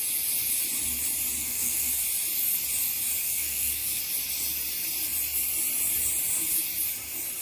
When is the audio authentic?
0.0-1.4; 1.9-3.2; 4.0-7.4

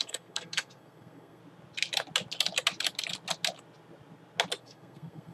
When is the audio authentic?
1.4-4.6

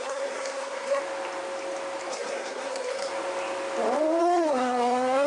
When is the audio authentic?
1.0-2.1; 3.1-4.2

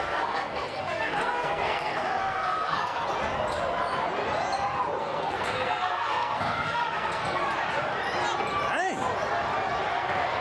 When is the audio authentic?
3.1-5.0; 7.4-9.9

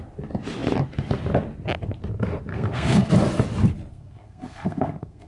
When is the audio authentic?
0.0-2.5; 3.1-3.9

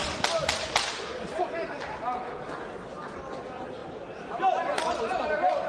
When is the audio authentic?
0.0-5.7

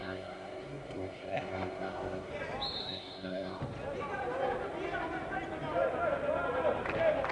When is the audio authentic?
2.3-2.8; 3.6-7.3